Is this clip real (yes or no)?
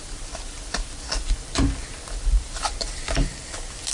no